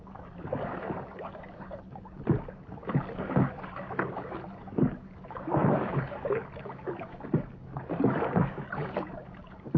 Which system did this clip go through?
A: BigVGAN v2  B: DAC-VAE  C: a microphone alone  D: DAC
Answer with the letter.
D